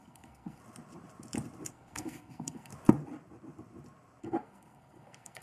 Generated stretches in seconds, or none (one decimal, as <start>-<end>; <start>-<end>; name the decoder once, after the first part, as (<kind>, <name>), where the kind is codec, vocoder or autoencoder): 0.0-0.6 (codec, SNAC); 1.7-2.7; 4.2-5.4